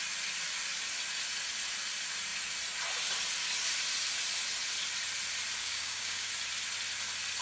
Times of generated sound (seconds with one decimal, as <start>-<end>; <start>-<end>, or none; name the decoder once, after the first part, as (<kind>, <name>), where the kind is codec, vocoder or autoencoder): 5.6-6.3 (codec, DAC)